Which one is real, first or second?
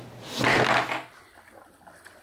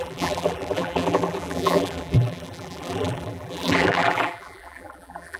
first